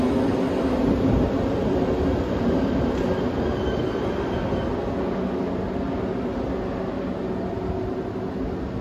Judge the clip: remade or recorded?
recorded